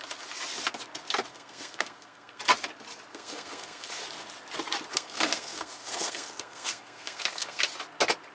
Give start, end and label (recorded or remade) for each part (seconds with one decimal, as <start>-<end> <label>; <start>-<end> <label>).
0.0-1.3 recorded; 1.3-2.4 remade; 2.4-3.1 recorded; 3.1-3.9 remade; 3.9-4.9 recorded; 4.9-7.6 remade; 7.6-8.3 recorded